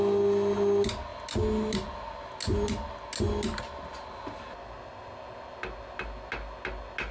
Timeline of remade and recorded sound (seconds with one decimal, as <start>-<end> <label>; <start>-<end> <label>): 0.0-7.1 recorded